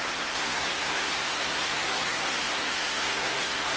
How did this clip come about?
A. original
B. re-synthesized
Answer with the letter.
B